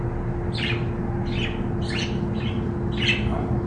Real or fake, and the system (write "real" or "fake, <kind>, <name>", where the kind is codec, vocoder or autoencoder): real